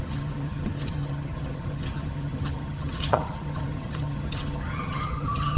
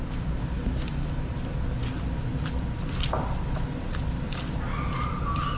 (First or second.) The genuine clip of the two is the second